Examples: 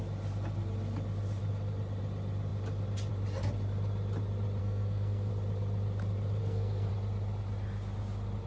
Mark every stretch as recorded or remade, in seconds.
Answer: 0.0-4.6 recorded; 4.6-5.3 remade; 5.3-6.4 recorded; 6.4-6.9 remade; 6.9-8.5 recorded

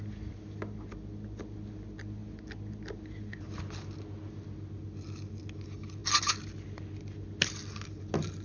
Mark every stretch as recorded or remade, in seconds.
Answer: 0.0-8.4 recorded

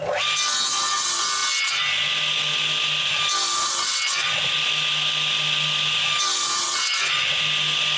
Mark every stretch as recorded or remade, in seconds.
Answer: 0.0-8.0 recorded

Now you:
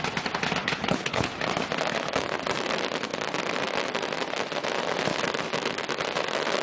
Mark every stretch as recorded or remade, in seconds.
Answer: 0.0-0.6 recorded; 0.6-1.3 remade; 1.3-6.6 recorded

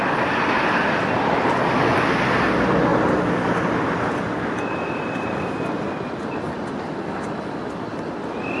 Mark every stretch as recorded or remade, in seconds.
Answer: 0.0-8.6 recorded

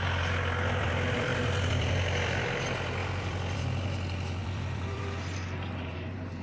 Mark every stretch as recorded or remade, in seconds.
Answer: 0.0-0.7 recorded; 0.7-2.4 remade; 2.4-3.0 recorded; 3.0-3.6 remade; 3.6-4.4 recorded; 4.4-5.0 remade; 5.0-6.4 recorded

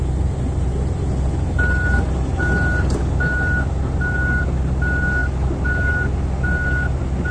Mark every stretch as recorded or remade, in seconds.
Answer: 0.0-7.3 recorded